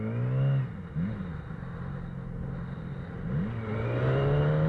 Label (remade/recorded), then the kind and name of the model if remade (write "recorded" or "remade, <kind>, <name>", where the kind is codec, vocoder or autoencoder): recorded